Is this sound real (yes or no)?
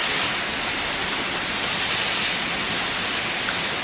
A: yes